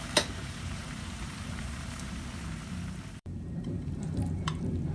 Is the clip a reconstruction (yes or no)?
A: yes